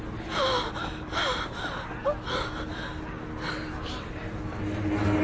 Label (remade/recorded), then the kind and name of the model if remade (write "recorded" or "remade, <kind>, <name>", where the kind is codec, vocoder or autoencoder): recorded